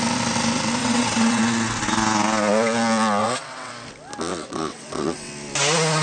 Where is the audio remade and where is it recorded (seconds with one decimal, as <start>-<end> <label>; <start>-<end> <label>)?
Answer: 0.0-0.8 recorded; 0.8-1.4 remade; 1.4-3.2 recorded; 3.2-3.7 remade; 3.7-4.3 recorded; 4.3-5.3 remade; 5.3-6.0 recorded